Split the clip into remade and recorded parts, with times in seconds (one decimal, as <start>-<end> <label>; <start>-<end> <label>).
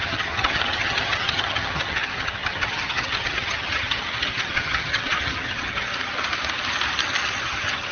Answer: 0.0-5.9 remade; 5.9-7.4 recorded; 7.4-7.9 remade